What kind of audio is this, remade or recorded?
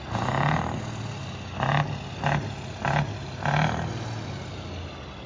recorded